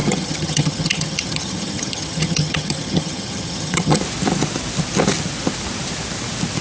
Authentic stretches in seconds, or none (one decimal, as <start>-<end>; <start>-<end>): 4.0-6.6